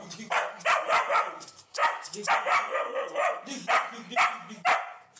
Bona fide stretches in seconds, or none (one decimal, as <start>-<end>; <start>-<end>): 0.0-5.2